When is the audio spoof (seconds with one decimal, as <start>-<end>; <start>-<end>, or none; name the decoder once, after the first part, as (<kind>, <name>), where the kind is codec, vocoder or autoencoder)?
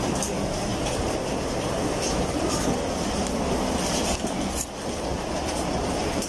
none